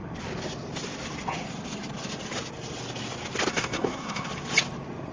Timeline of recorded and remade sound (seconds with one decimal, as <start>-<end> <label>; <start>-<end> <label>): 0.0-3.5 recorded; 3.5-4.3 remade; 4.3-5.1 recorded